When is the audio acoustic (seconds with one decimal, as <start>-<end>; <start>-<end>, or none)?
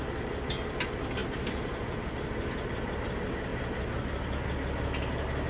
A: 0.0-5.5